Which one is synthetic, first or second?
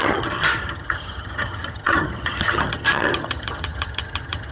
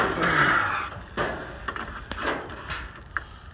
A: first